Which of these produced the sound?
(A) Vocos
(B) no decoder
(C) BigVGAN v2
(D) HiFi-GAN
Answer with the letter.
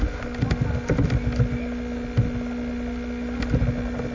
B